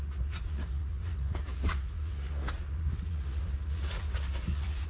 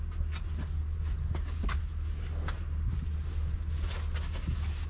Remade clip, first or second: first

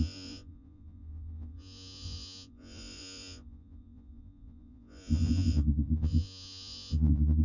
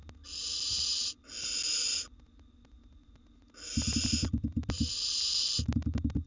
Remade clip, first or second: first